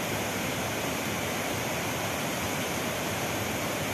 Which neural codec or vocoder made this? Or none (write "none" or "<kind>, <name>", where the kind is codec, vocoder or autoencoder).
vocoder, BigVGAN v2